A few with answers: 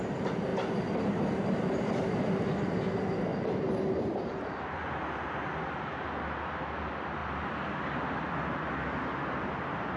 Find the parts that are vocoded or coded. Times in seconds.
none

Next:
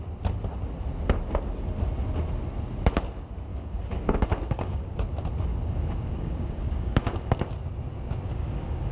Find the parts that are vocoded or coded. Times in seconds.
3.5-4.9 (codec, DAC); 5.5-7.3; 8.3-8.9

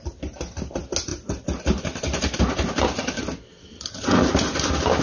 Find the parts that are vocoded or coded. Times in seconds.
none

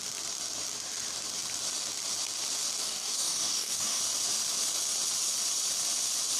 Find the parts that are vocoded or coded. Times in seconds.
2.8-4.0 (codec, DAC)

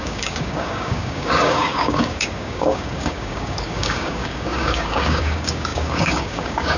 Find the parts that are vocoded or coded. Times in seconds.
0.0-6.8 (codec, DAC)

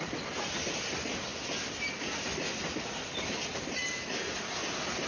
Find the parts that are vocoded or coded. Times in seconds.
none

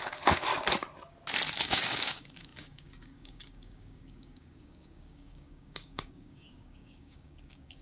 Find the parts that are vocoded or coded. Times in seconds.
0.0-0.5 (codec, DAC); 1.6-7.8

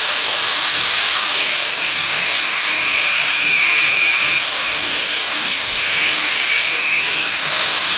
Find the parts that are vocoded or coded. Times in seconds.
0.0-8.0 (codec, DAC)